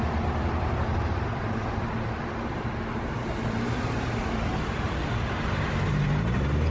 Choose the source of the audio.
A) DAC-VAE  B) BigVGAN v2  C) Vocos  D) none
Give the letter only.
D